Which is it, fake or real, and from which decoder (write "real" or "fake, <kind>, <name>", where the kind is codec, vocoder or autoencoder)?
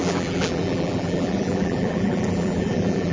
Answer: fake, vocoder, BigVGAN v2